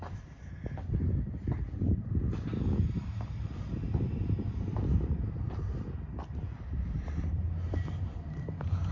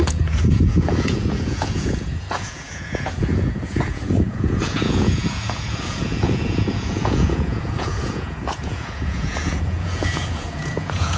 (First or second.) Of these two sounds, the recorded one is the first